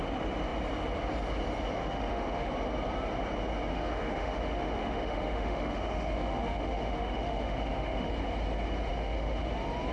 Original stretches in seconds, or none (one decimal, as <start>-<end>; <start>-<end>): 0.0-1.8; 2.5-3.7; 8.1-8.9; 9.5-9.9